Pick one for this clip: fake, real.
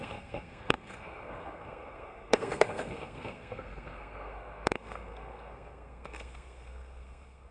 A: fake